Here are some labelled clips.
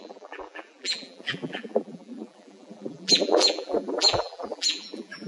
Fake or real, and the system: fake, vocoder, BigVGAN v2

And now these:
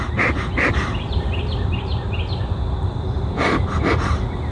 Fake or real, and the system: real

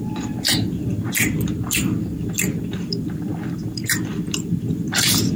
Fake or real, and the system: fake, vocoder, BigVGAN v2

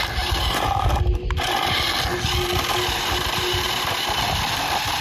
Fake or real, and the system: real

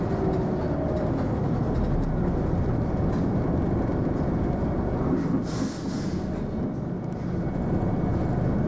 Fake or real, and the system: real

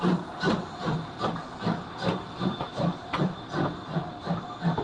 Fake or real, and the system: fake, vocoder, BigVGAN v2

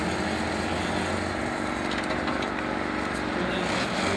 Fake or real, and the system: real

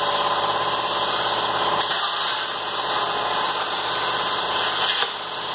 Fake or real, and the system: real